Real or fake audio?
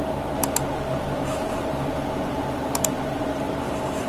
fake